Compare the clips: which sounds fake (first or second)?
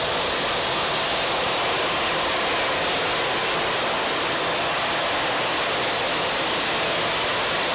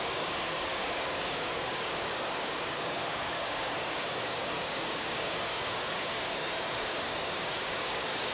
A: second